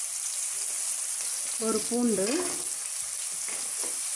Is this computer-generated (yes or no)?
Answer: no